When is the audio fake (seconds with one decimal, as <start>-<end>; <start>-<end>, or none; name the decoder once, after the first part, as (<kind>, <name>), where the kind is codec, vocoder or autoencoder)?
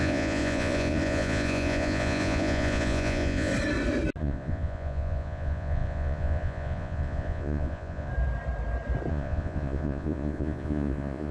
0.0-3.5 (vocoder, Vocos); 4.2-8.1; 9.1-11.3